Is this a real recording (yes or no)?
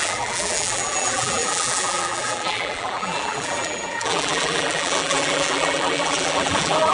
no